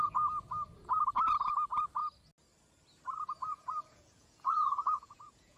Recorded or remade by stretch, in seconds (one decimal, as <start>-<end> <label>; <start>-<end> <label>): 0.0-3.4 recorded; 3.4-5.6 remade